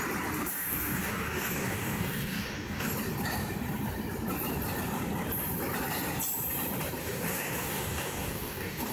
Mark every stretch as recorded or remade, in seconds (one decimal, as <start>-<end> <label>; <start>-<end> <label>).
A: 0.0-0.5 recorded; 0.5-2.9 remade; 2.9-7.0 recorded; 7.0-8.9 remade